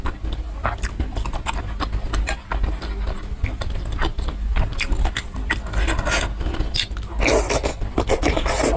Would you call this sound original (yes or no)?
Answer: yes